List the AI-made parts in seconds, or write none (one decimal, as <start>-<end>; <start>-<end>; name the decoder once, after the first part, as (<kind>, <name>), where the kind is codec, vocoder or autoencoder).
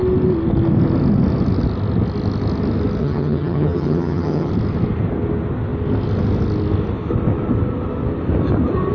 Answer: 3.0-4.5 (vocoder, HiFi-GAN)